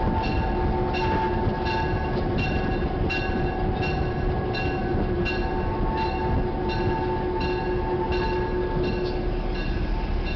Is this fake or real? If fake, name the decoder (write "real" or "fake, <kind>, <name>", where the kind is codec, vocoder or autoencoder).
real